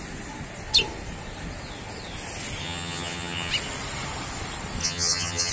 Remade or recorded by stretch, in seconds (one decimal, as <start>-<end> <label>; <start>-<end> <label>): 0.0-2.6 recorded; 2.6-3.5 remade; 3.5-4.8 recorded; 4.8-5.5 remade

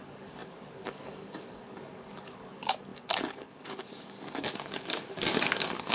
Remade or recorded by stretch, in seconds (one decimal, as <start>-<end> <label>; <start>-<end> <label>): 0.0-5.9 remade

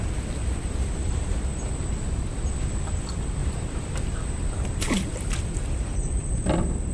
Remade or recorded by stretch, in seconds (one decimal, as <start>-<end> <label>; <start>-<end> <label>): 0.0-3.4 recorded; 3.4-6.1 remade; 6.1-6.9 recorded